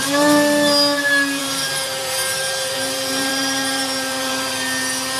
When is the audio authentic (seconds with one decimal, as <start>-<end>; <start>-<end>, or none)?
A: 0.0-1.4; 4.5-5.2